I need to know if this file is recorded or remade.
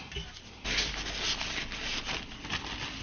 recorded